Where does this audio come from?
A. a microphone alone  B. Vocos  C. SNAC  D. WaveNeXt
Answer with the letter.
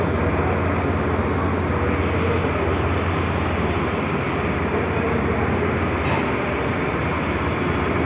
A